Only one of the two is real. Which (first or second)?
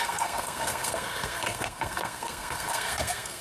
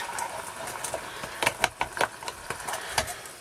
second